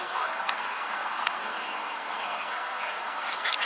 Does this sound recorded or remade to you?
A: remade